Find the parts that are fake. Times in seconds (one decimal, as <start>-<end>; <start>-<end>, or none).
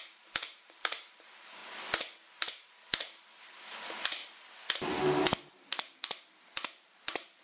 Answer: 0.0-1.6; 3.6-4.2; 4.8-7.4